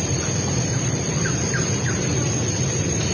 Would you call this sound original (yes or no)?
yes